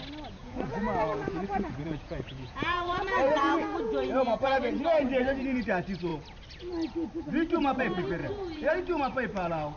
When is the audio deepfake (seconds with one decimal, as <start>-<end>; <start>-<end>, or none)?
0.4-5.4; 8.2-8.7